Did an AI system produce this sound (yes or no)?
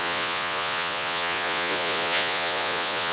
yes